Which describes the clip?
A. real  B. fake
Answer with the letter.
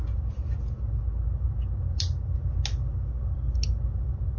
A